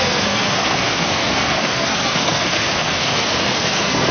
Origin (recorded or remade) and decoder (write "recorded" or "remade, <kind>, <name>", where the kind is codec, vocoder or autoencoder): remade, codec, SNAC